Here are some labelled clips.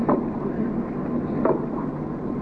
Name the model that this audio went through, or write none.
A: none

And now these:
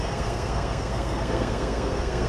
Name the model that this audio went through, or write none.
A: codec, SNAC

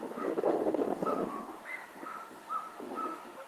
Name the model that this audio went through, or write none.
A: autoencoder, DAC-VAE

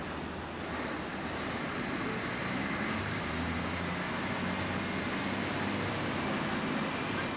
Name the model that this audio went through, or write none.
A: none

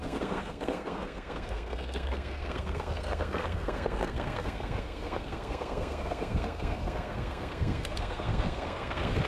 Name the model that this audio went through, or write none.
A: codec, SNAC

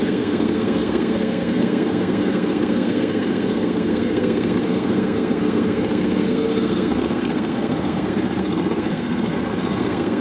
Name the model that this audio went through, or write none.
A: codec, SNAC